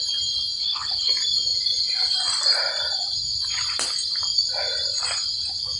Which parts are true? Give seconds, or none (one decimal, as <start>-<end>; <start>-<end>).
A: 0.0-0.6; 1.1-5.8

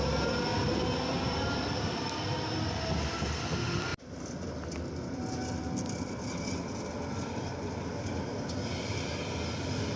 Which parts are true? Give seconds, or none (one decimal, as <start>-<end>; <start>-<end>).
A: 0.0-10.0

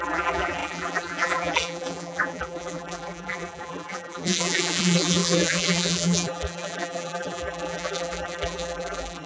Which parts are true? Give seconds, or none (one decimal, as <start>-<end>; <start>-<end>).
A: none

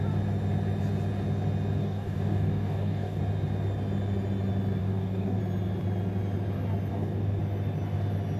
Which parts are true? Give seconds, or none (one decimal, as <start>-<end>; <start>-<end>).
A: 0.0-1.8; 3.2-4.8; 5.4-6.9; 7.4-8.4